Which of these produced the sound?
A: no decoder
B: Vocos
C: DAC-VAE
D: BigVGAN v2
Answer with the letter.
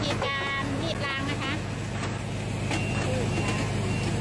A